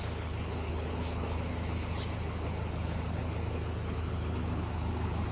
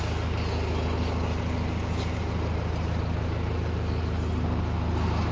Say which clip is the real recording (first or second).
second